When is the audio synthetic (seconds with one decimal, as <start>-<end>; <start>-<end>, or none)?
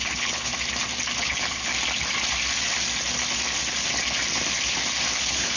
0.0-0.5; 1.2-1.7; 5.1-5.6